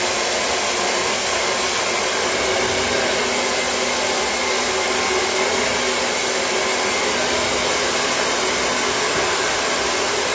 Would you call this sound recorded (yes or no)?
yes